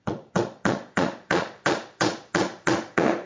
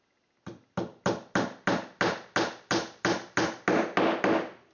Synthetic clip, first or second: first